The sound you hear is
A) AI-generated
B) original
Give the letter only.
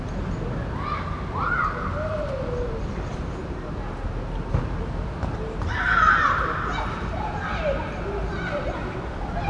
B